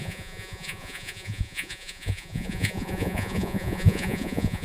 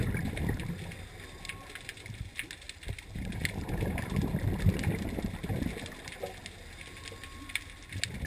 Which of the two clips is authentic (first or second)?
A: second